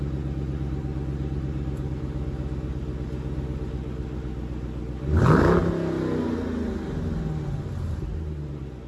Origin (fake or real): real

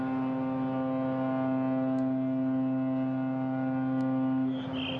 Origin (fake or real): real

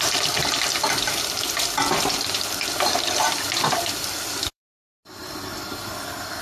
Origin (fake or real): fake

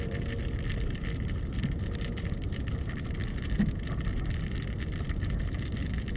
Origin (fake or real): fake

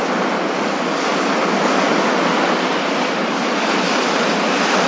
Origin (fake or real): real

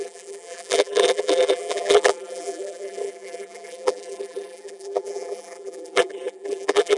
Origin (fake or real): fake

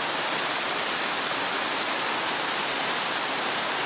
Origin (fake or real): real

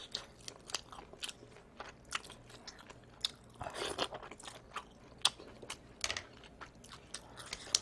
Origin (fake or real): real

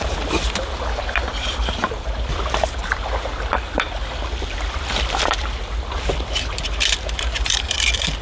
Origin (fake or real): fake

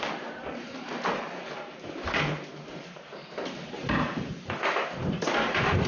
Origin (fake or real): fake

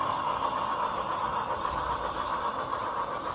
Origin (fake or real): fake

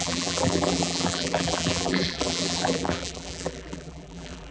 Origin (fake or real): fake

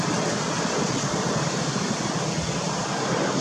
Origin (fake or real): real